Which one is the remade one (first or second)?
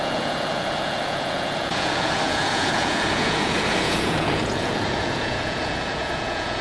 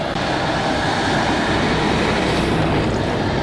first